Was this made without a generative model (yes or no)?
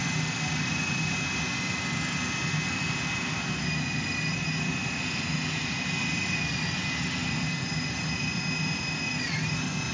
yes